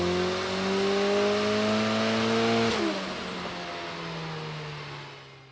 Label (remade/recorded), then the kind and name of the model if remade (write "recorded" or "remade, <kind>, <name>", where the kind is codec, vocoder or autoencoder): recorded